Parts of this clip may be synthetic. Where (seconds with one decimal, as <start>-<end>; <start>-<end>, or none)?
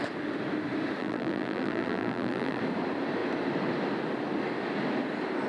1.0-2.6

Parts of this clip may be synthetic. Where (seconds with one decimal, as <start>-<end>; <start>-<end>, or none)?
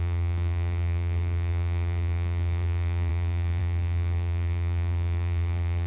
0.0-5.9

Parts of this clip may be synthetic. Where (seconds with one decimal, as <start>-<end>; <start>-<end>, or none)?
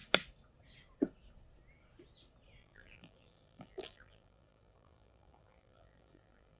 2.6-6.6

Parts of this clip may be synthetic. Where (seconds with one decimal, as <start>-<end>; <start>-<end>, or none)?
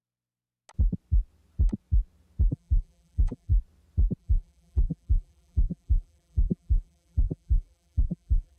2.5-3.5; 4.2-8.6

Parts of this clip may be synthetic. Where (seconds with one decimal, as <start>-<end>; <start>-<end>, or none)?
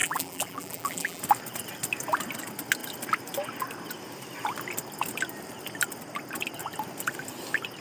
0.0-1.2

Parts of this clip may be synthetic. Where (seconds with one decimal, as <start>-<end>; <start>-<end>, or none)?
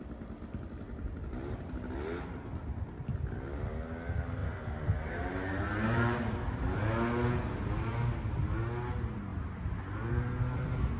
4.4-6.3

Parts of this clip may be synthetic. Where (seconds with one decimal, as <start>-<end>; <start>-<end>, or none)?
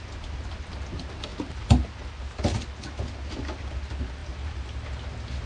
4.2-5.0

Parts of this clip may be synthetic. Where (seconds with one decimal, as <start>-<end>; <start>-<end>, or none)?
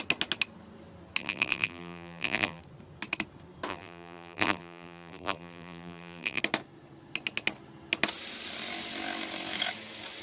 1.2-2.6; 3.7-6.4